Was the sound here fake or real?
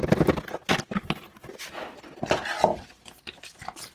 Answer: real